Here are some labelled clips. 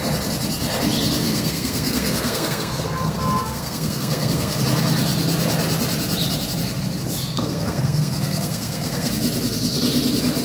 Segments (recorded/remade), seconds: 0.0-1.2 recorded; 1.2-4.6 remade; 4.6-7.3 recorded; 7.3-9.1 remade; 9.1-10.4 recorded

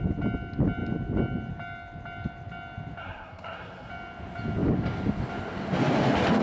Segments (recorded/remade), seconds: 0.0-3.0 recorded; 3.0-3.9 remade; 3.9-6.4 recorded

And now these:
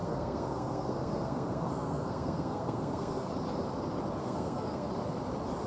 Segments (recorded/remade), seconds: 0.0-3.3 remade; 3.3-4.2 recorded; 4.2-4.9 remade; 4.9-5.7 recorded